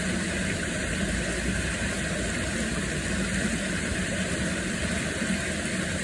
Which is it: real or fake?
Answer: real